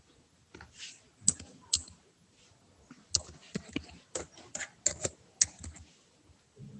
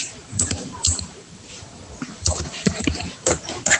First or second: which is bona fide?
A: first